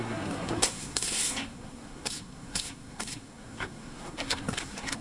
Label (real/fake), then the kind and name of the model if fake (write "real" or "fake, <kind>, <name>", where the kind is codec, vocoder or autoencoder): fake, codec, SNAC